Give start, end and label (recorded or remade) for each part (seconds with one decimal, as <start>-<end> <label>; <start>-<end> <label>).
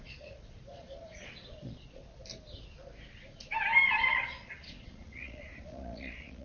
0.0-2.0 remade; 2.0-4.1 recorded; 4.1-6.4 remade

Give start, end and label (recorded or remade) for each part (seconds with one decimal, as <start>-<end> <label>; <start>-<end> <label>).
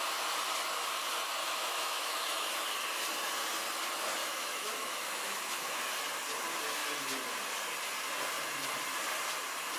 0.0-1.4 recorded; 1.4-2.5 remade; 2.5-4.2 recorded; 4.2-5.8 remade; 5.8-9.8 recorded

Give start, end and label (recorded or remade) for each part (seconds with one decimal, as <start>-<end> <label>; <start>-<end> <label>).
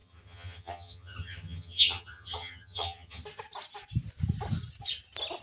0.0-3.2 remade; 3.2-5.4 recorded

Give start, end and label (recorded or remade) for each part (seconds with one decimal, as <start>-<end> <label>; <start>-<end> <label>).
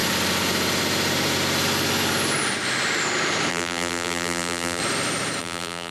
0.0-3.5 recorded; 3.5-4.8 remade; 4.8-5.4 recorded; 5.4-5.9 remade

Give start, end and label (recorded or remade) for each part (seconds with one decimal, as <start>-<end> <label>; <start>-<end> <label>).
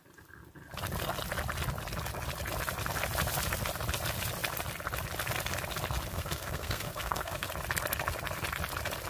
0.0-6.1 recorded; 6.1-7.5 remade; 7.5-9.1 recorded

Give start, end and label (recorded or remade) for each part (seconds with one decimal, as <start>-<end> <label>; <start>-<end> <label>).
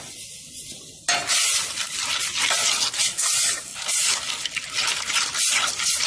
0.0-6.1 recorded